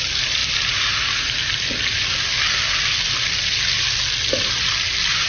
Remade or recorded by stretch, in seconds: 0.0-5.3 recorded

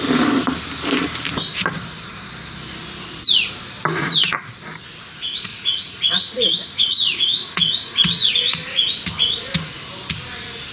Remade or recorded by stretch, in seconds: 0.0-3.9 recorded; 3.9-4.5 remade; 4.5-5.5 recorded; 5.5-8.3 remade; 8.3-10.7 recorded

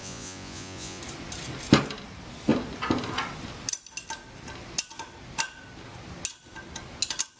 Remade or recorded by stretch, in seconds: 0.0-1.0 remade; 1.0-7.4 recorded